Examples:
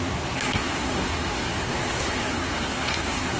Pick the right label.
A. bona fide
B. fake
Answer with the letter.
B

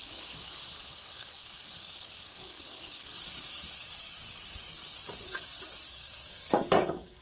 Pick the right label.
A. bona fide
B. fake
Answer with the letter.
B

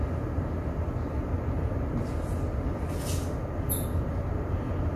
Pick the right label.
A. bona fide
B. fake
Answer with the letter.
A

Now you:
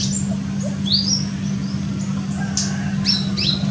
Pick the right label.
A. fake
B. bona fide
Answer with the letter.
B